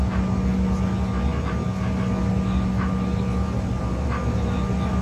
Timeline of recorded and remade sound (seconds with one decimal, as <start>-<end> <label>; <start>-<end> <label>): 0.0-5.0 recorded